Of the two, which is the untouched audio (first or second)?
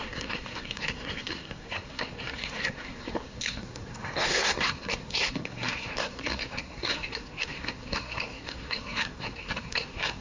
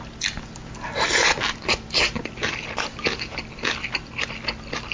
second